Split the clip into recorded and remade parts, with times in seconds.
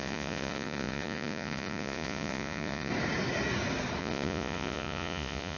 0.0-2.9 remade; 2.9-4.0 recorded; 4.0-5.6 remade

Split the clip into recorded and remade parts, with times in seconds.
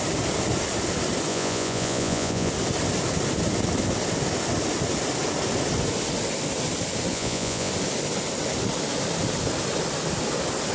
0.0-1.3 recorded; 1.3-2.5 remade; 2.5-7.1 recorded; 7.1-7.7 remade; 7.7-10.7 recorded